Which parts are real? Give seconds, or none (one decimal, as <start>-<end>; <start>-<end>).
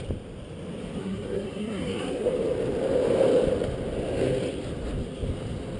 0.0-1.0; 2.3-5.8